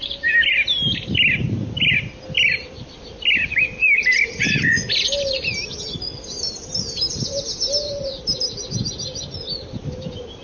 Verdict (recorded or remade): recorded